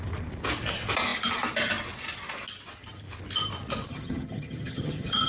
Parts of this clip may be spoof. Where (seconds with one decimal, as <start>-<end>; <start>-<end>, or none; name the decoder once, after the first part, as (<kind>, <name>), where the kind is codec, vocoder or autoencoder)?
3.9-5.3 (vocoder, HiFi-GAN)